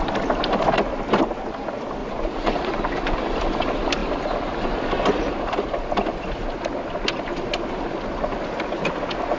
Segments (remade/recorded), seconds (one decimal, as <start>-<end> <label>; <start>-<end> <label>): 0.0-2.0 recorded; 2.0-2.7 remade; 2.7-9.4 recorded